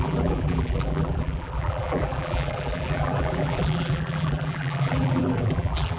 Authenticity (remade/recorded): remade